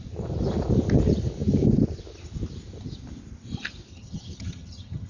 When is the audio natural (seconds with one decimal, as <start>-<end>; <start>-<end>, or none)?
0.0-3.9